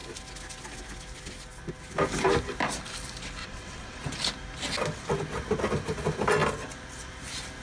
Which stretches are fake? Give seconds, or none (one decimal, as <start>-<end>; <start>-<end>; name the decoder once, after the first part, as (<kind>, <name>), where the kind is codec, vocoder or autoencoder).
3.4-4.0 (vocoder, WaveNeXt)